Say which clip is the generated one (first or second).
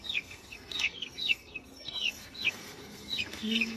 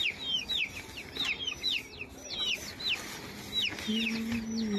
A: first